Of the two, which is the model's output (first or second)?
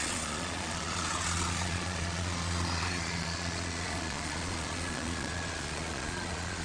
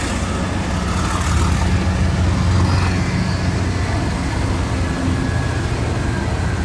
first